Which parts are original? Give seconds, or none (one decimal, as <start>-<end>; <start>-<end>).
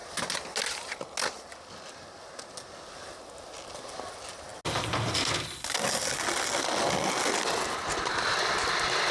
0.0-9.1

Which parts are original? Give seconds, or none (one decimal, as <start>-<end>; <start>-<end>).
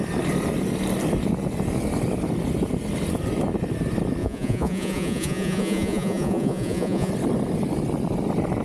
0.0-4.2; 7.1-8.6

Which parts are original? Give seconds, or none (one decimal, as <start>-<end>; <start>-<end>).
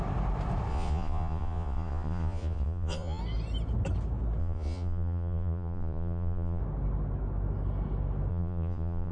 0.0-0.7; 3.2-4.4; 6.6-8.3